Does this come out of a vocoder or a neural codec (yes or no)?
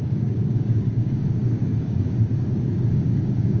yes